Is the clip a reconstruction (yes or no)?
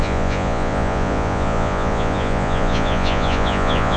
yes